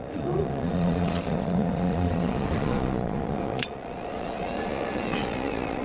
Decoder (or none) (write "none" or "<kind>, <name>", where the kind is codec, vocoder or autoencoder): vocoder, Vocos